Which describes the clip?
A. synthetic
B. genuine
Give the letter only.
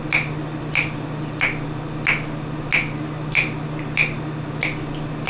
B